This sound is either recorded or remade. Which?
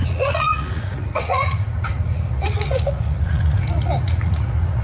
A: remade